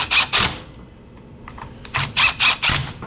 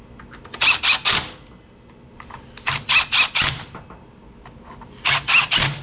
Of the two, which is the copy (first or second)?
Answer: first